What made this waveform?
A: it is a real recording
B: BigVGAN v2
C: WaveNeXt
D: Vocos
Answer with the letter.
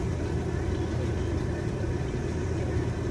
B